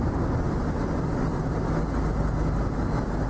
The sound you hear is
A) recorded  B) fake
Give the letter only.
A